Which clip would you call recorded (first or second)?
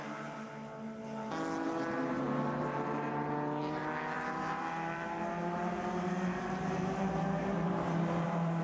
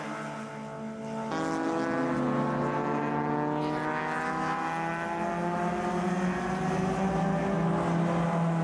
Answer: second